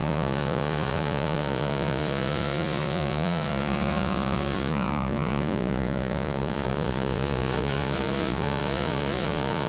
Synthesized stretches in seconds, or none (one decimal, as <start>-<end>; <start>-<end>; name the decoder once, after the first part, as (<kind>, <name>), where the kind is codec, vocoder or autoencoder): 0.0-9.7 (vocoder, Vocos)